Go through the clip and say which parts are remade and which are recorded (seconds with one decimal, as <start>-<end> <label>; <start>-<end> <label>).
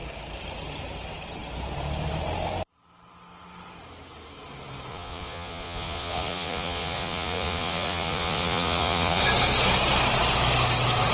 0.0-4.9 recorded; 4.9-9.2 remade; 9.2-11.1 recorded